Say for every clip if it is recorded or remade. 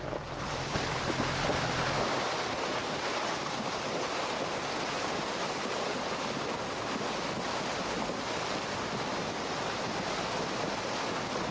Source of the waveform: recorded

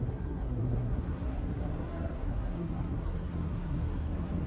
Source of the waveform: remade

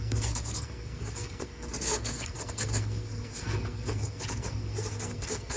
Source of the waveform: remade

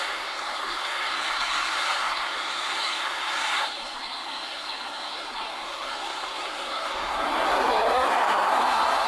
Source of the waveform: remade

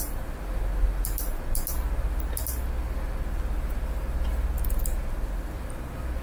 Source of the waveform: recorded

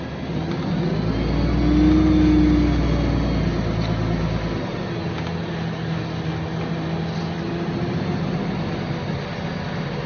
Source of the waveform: recorded